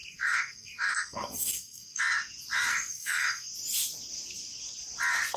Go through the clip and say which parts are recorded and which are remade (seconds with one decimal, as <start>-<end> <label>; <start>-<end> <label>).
0.0-2.0 remade; 2.0-2.7 recorded; 2.7-3.5 remade; 3.5-5.4 recorded